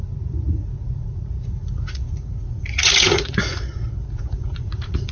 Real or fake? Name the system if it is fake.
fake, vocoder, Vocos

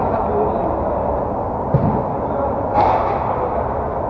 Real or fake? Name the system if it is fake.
real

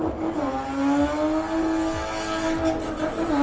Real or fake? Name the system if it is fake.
real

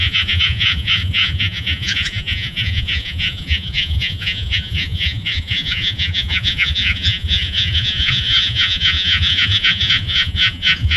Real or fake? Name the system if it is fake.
fake, vocoder, Vocos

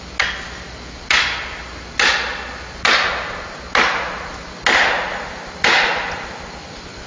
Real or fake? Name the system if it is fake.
real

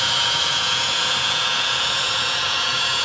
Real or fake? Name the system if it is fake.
fake, vocoder, Vocos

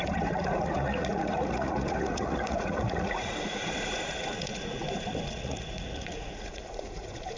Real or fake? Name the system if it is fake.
fake, vocoder, Vocos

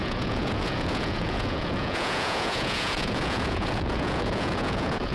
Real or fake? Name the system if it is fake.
fake, vocoder, Vocos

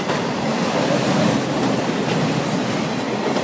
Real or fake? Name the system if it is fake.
real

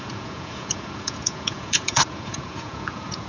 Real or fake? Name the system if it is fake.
fake, vocoder, Vocos